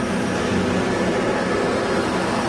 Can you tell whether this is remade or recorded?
recorded